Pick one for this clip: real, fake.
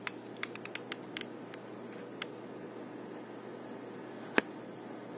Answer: real